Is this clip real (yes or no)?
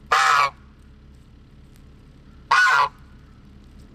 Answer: yes